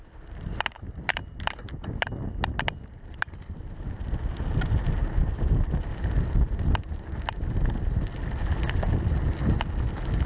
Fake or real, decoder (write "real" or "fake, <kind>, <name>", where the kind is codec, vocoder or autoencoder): real